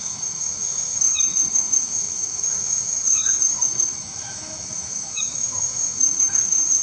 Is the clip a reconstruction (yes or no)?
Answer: yes